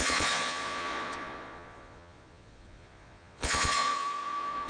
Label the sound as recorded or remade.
remade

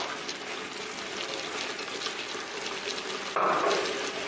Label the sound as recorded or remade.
recorded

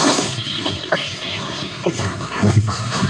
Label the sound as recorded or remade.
remade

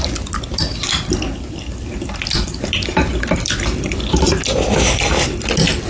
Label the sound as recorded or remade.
recorded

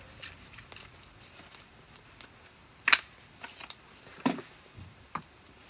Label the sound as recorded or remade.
recorded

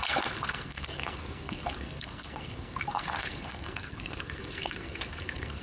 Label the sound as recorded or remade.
remade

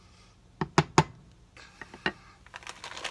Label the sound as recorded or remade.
recorded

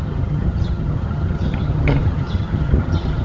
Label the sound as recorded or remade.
remade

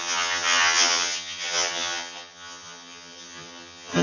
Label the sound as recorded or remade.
remade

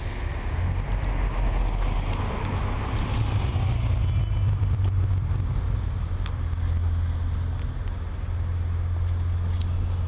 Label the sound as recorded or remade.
recorded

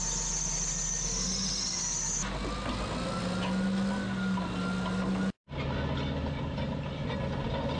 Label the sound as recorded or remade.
recorded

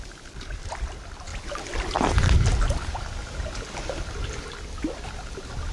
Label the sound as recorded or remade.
recorded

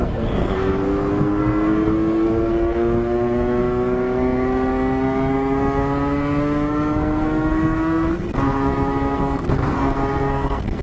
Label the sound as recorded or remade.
remade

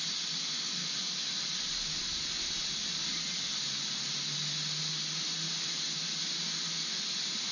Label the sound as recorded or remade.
recorded